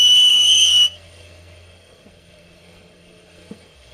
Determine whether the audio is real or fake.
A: fake